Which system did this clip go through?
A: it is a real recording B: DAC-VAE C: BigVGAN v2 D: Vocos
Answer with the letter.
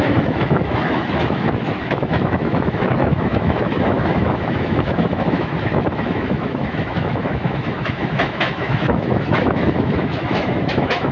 B